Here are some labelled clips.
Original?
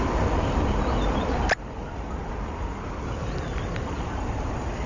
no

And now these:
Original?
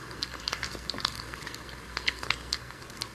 no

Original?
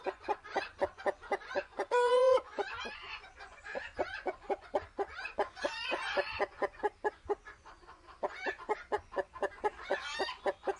no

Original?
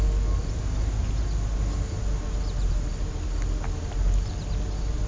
yes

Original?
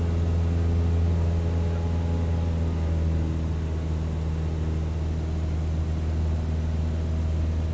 yes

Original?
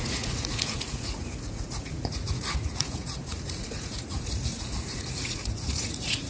no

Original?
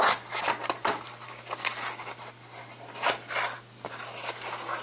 yes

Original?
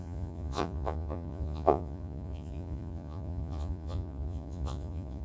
no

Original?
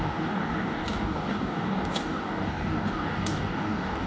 no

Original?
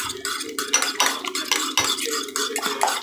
yes